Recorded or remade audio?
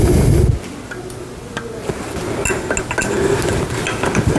recorded